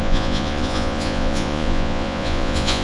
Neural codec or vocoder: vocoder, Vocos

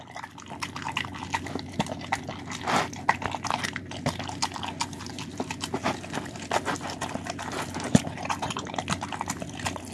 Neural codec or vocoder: none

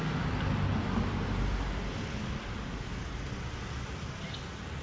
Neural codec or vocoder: none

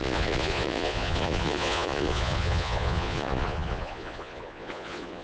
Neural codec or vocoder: vocoder, Vocos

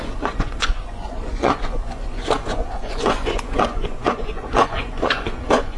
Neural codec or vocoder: vocoder, Vocos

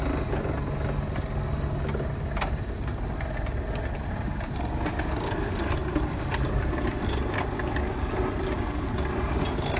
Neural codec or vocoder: none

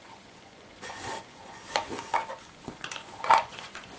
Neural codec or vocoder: vocoder, Vocos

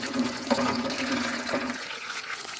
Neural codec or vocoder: vocoder, Vocos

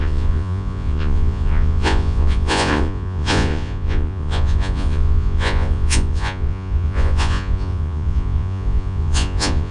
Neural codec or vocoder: vocoder, Vocos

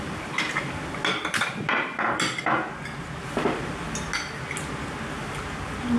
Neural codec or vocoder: none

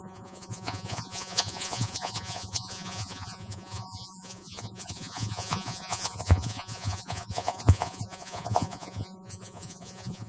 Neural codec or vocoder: vocoder, Vocos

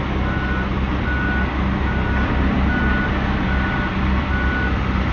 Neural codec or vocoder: none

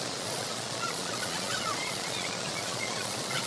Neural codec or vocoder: vocoder, Vocos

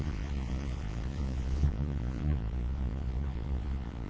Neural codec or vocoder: vocoder, Vocos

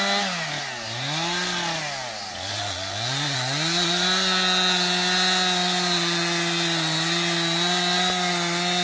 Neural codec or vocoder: none